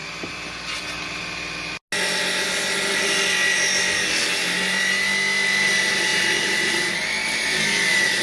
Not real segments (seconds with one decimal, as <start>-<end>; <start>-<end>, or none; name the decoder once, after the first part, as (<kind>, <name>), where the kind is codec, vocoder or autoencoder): none